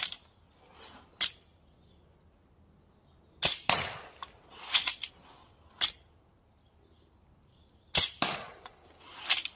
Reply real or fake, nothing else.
real